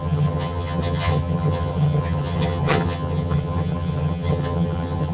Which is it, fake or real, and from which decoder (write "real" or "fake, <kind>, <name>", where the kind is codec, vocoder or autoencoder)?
fake, vocoder, HiFi-GAN